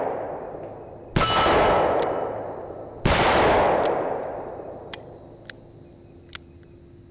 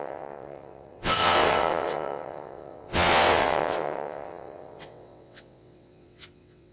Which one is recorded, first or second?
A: first